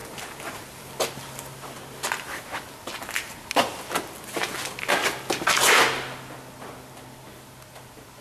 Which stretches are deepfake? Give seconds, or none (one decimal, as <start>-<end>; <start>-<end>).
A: none